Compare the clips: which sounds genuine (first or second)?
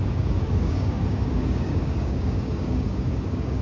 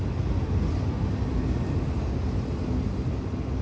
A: second